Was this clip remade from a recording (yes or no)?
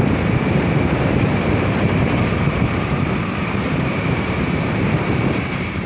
yes